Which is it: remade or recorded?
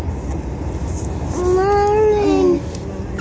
recorded